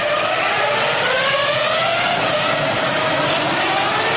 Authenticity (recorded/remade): recorded